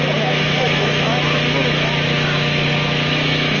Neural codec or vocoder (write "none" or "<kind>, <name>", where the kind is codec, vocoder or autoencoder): autoencoder, DAC-VAE